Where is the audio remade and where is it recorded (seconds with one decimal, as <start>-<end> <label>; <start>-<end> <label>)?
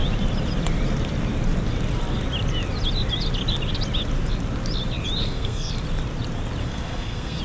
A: 0.0-5.2 recorded; 5.2-5.7 remade; 5.7-6.6 recorded; 6.6-7.4 remade